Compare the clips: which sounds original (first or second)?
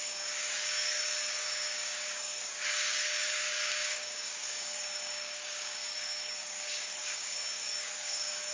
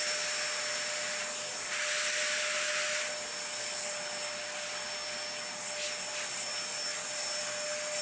second